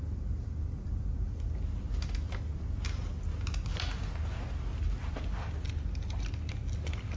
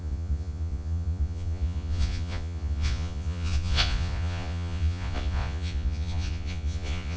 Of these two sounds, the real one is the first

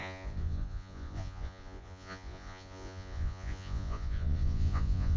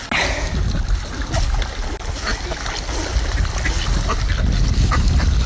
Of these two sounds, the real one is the second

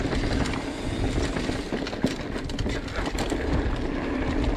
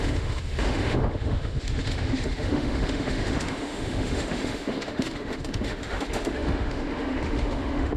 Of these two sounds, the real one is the first